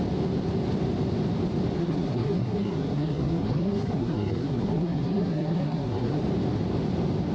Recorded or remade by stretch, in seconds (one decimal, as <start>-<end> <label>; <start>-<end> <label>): 0.0-1.8 recorded; 1.8-6.2 remade; 6.2-7.3 recorded